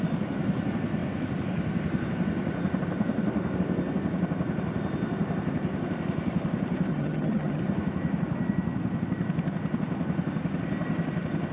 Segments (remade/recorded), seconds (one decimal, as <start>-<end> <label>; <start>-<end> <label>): 0.0-6.9 recorded; 6.9-7.6 remade; 7.6-11.5 recorded

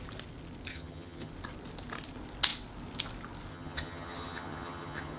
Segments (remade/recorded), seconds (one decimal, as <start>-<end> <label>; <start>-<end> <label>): 0.0-0.7 recorded; 0.7-1.3 remade; 1.3-3.5 recorded; 3.5-5.2 remade

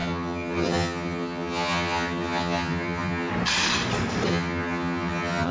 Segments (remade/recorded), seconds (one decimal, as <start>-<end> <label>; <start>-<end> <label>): 0.0-3.3 remade; 3.3-4.3 recorded; 4.3-5.5 remade

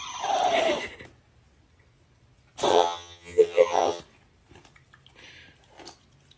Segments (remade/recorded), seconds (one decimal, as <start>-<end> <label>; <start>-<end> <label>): 0.0-2.7 recorded; 2.7-4.0 remade; 4.0-6.4 recorded

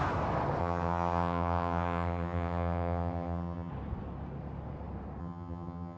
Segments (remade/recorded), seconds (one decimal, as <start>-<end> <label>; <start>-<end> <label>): 0.0-0.6 recorded; 0.6-3.7 remade; 3.7-5.2 recorded; 5.2-6.0 remade

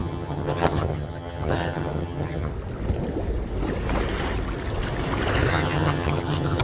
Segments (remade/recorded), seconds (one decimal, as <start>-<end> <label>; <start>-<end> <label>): 0.0-2.5 remade; 2.5-5.5 recorded; 5.5-6.6 remade

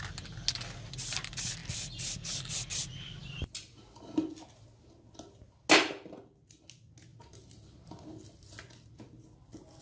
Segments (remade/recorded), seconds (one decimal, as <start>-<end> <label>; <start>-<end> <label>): 0.0-9.8 recorded